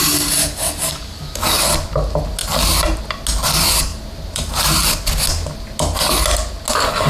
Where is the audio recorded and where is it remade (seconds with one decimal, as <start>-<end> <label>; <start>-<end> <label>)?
0.0-0.4 recorded; 0.4-1.6 remade; 1.6-7.1 recorded